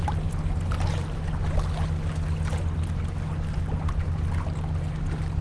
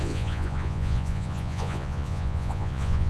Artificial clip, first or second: second